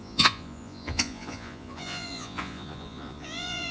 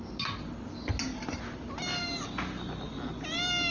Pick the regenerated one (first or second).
first